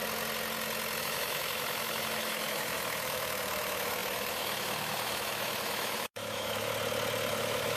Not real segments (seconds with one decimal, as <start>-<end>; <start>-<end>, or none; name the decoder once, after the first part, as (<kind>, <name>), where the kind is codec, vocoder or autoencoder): 1.0-6.7 (autoencoder, DAC-VAE); 7.3-7.8